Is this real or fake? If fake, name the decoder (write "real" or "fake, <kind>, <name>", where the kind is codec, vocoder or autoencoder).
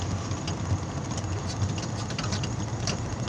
real